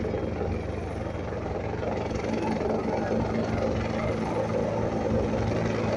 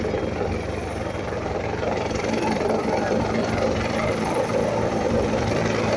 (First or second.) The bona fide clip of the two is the first